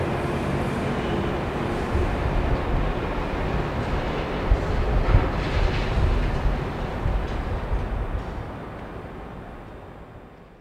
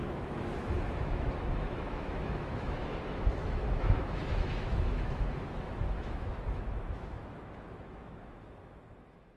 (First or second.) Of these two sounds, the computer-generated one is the second